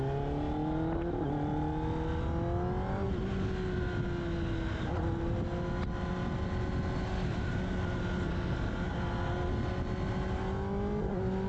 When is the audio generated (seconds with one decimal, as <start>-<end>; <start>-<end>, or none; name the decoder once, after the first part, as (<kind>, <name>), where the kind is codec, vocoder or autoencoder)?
none